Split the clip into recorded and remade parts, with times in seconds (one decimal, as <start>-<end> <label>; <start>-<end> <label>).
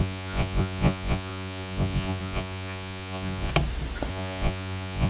0.0-3.5 remade; 3.5-4.1 recorded; 4.1-5.1 remade